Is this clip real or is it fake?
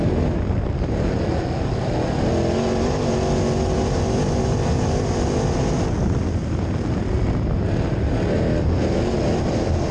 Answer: real